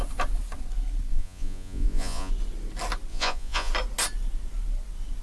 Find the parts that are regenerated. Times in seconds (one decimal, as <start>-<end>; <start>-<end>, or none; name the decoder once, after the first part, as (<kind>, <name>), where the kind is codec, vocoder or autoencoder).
1.1-2.3 (vocoder, Vocos); 3.1-3.7